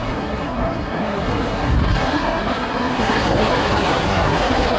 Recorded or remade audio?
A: remade